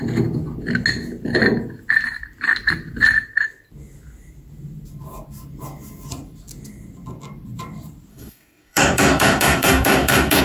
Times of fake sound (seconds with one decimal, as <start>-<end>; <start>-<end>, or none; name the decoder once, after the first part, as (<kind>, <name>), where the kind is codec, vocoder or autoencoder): 8.1-10.4 (codec, DAC)